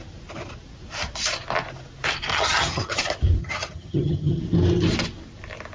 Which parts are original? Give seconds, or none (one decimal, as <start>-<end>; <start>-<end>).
0.0-2.3; 3.0-3.4; 4.4-5.7